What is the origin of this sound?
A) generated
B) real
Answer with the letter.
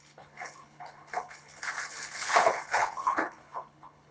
A